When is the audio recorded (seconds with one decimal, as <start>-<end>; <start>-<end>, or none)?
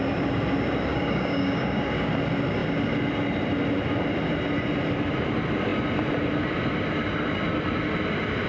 0.0-0.9; 2.1-8.5